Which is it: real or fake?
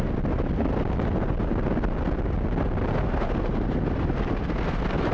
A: real